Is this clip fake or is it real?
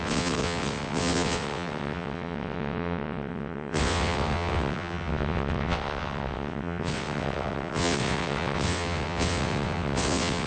fake